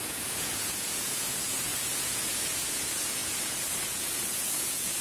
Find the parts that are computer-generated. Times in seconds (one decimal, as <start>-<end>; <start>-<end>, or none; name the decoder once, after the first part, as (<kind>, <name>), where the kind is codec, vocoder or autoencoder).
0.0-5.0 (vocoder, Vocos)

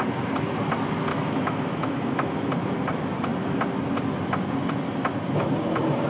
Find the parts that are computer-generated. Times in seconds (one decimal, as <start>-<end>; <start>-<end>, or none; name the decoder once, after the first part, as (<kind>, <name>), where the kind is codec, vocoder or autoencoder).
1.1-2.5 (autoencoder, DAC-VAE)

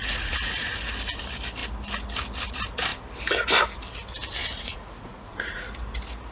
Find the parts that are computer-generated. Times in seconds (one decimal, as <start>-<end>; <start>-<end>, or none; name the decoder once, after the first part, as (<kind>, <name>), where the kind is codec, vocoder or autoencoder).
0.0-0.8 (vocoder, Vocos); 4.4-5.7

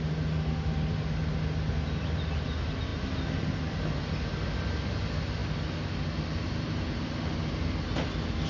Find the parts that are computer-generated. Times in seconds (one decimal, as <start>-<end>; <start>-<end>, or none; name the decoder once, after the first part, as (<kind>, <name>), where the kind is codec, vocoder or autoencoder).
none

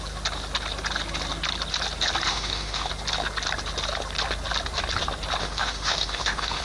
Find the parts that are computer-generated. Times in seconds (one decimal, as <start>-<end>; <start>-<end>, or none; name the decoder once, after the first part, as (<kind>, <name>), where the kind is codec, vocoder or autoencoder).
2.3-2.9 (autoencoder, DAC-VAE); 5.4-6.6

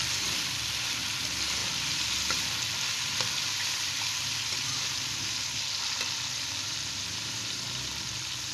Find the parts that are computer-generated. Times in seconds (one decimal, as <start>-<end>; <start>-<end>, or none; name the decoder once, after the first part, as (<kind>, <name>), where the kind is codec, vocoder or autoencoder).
none

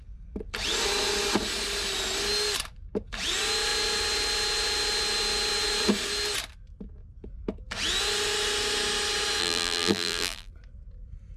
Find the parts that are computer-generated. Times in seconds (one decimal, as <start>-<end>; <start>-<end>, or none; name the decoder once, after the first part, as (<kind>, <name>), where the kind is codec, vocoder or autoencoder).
9.4-10.5 (vocoder, BigVGAN v2)